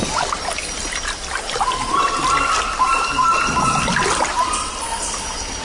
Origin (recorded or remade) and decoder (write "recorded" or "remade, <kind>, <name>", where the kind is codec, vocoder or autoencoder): recorded